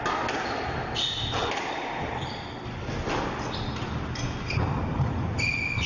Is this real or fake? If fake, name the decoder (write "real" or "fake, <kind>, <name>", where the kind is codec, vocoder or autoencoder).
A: real